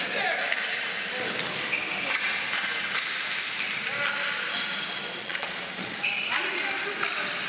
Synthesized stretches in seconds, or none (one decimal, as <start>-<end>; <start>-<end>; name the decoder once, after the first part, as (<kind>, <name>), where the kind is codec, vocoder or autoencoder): 5.2-5.9 (vocoder, Vocos)